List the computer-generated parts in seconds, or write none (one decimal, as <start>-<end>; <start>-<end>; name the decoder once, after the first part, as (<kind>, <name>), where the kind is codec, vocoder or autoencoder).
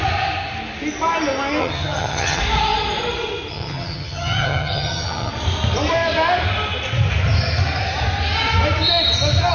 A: 1.6-2.4 (vocoder, HiFi-GAN); 3.5-5.3